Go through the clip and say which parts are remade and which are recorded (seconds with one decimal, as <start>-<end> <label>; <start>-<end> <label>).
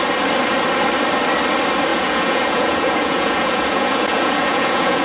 0.0-1.9 recorded; 1.9-5.0 remade